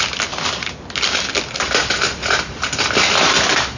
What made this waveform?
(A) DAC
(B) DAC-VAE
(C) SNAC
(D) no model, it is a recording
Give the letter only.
D